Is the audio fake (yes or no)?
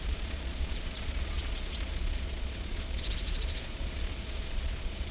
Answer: yes